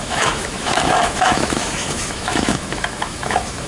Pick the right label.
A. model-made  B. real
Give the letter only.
A